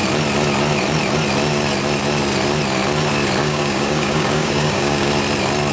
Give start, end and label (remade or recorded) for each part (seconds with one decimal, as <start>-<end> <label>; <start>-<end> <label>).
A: 0.0-3.4 recorded; 3.4-5.1 remade; 5.1-5.7 recorded